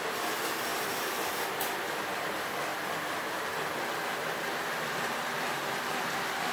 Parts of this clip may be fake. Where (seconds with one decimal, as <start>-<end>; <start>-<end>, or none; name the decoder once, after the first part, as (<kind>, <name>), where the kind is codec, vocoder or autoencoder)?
0.0-2.7 (vocoder, BigVGAN v2); 4.6-6.5